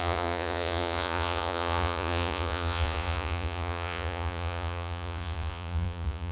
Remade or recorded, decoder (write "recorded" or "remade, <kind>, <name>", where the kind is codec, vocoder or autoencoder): remade, vocoder, Vocos